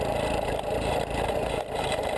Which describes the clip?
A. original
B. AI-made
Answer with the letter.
B